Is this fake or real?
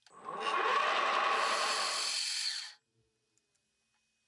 real